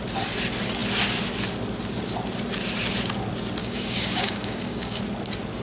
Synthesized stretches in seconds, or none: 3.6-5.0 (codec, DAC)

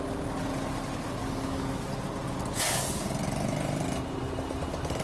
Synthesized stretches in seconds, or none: 1.2-1.9 (codec, DAC)